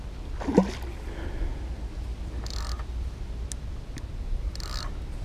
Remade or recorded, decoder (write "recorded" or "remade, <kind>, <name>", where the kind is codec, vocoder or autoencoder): recorded